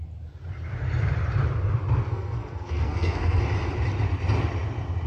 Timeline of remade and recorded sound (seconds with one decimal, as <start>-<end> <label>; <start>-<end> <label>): 0.0-2.1 recorded; 2.1-3.4 remade; 3.4-5.1 recorded